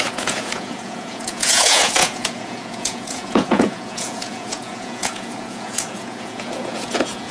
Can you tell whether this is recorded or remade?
remade